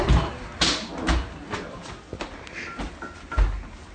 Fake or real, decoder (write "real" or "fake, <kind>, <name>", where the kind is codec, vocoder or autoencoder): real